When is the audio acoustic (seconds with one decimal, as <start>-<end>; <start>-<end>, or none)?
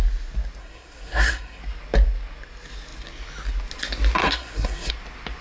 0.0-0.6; 1.6-4.2; 4.9-5.4